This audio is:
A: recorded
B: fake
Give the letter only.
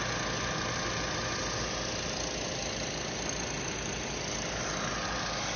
A